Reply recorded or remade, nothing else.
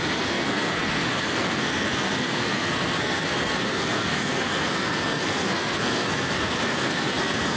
remade